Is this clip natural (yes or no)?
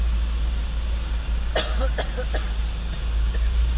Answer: yes